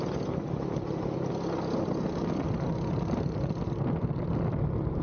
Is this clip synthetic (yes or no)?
no